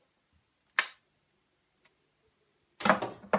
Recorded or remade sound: recorded